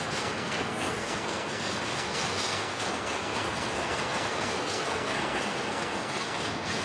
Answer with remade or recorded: remade